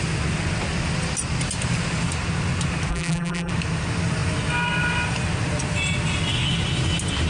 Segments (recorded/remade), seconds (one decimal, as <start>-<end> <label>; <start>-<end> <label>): 0.0-2.9 recorded; 2.9-3.5 remade; 3.5-7.3 recorded